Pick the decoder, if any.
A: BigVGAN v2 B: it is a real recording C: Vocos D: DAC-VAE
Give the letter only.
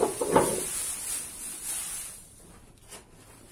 B